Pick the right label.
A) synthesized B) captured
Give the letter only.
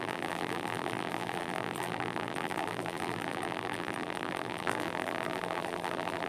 A